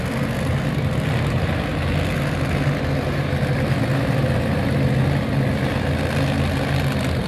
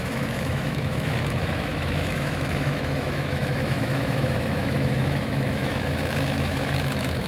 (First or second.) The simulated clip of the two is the second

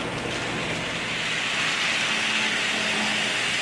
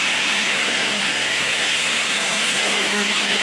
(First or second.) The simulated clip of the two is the second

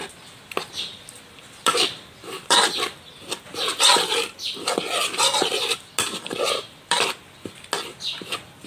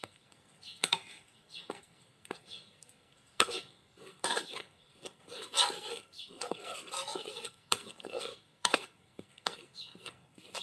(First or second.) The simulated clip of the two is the second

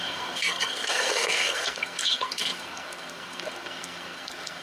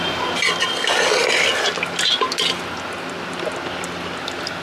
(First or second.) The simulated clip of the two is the first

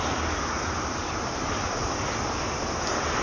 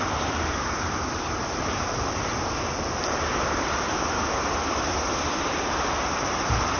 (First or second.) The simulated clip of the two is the second